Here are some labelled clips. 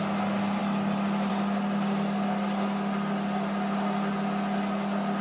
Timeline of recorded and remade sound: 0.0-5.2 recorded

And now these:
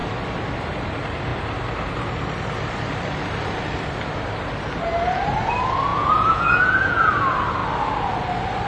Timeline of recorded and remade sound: 0.0-5.9 recorded; 5.9-7.1 remade; 7.1-8.7 recorded

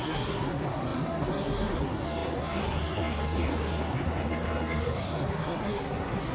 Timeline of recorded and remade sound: 0.0-6.3 remade

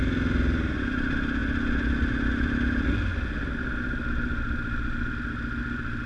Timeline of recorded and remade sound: 0.0-6.1 recorded

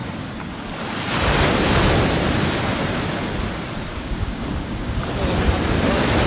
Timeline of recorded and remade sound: 0.0-3.9 recorded; 3.9-5.1 remade; 5.1-6.3 recorded

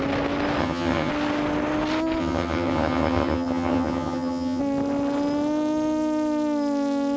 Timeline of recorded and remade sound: 0.0-0.6 recorded; 0.6-1.1 remade; 1.1-2.2 recorded; 2.2-4.6 remade; 4.6-7.2 recorded

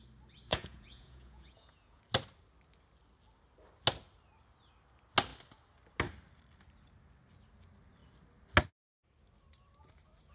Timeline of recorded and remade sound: 0.0-0.5 recorded; 0.5-2.0 remade; 2.0-10.3 recorded